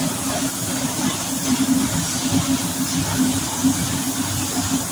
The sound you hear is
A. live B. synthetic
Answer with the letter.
A